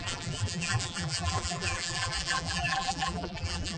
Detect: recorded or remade remade